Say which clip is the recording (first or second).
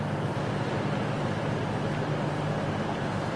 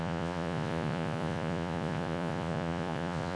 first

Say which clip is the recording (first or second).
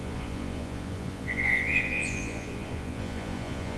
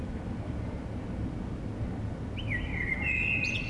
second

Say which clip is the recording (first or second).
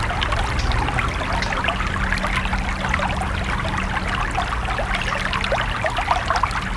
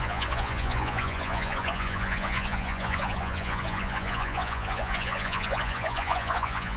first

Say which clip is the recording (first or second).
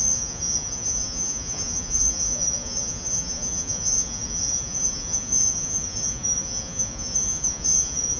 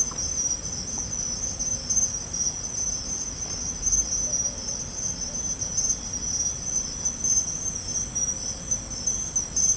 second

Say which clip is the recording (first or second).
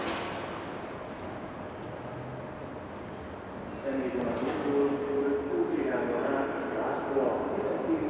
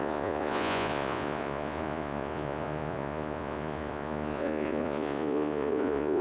first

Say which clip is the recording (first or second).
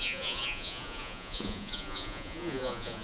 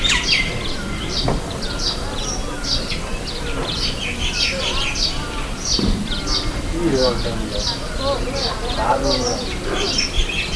second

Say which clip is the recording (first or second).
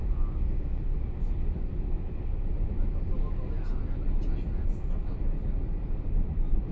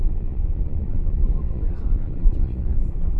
first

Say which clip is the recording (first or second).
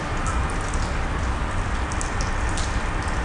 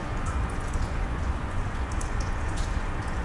first